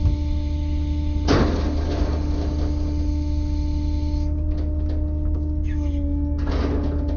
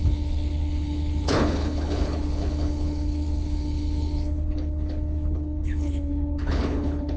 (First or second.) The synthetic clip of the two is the second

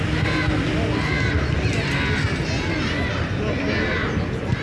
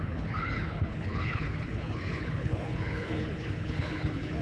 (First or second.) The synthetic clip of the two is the second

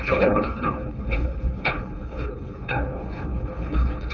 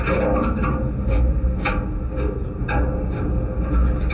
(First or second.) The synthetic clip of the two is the first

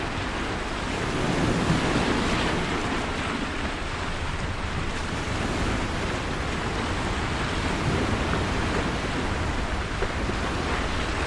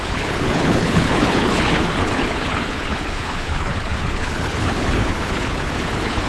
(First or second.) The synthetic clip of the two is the second